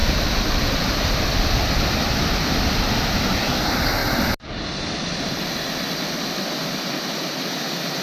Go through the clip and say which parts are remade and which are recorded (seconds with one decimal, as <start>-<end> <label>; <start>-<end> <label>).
0.0-1.7 remade; 1.7-8.0 recorded